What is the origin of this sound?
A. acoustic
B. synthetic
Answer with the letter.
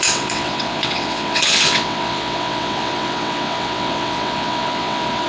B